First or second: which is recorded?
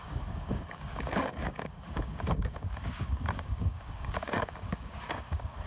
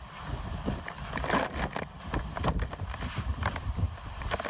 second